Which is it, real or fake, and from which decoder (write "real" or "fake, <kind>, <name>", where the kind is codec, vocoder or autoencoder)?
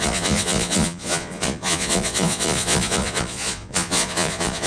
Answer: fake, vocoder, Vocos